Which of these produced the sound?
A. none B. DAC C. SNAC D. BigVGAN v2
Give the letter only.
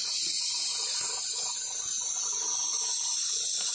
A